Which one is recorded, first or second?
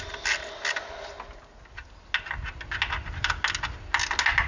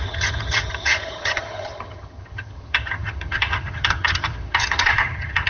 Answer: first